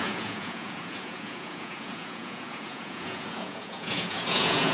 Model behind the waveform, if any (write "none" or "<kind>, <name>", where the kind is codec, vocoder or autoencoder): vocoder, Vocos